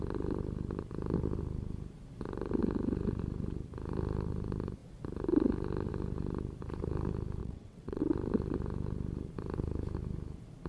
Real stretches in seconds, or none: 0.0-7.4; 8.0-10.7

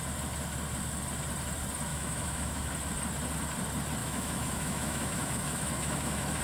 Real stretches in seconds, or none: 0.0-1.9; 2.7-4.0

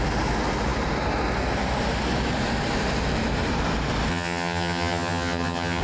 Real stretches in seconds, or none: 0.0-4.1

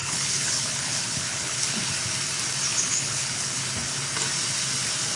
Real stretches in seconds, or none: 1.9-2.7; 3.7-5.2